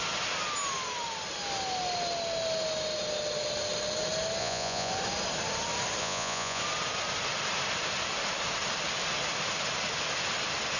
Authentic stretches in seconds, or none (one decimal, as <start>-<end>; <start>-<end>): 0.0-4.4; 4.9-6.0; 6.6-10.8

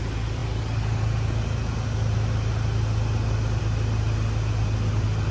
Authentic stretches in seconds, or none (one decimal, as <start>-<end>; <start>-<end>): 0.0-5.3

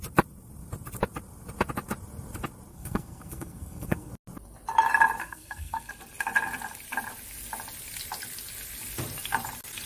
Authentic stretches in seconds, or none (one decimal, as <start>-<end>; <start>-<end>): 0.0-2.7; 4.1-5.2; 5.9-9.9